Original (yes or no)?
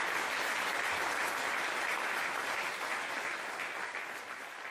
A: yes